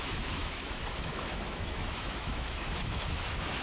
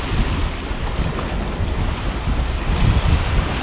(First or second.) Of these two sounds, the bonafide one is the second